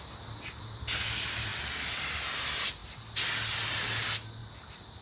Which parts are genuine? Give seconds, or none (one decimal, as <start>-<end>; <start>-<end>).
0.0-5.0